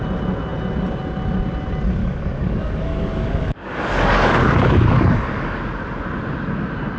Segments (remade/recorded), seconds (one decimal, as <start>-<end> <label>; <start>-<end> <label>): 0.0-2.0 recorded; 2.0-5.6 remade; 5.6-7.0 recorded